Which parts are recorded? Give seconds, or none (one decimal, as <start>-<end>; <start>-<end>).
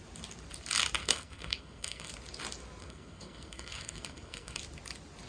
0.0-1.0; 2.1-2.8; 4.6-5.3